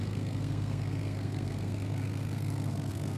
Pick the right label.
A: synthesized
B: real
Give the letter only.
A